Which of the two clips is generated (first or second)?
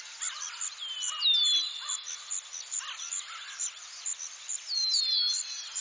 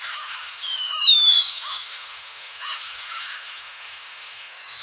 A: second